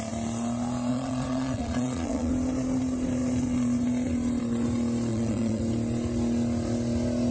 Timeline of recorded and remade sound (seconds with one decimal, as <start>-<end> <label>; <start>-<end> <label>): 0.0-0.9 recorded; 0.9-2.3 remade; 2.3-5.1 recorded; 5.1-5.6 remade; 5.6-7.3 recorded